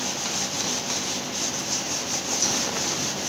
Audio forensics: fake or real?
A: real